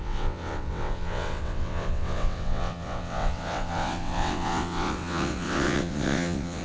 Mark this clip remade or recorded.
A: remade